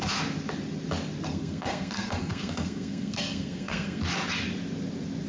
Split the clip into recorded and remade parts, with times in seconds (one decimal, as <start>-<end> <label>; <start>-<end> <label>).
0.0-1.3 recorded; 1.3-4.0 remade; 4.0-5.3 recorded